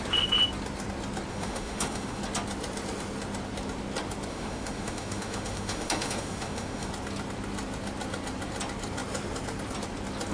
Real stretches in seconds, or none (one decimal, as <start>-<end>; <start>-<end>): 0.0-1.3; 2.2-4.3; 6.9-10.3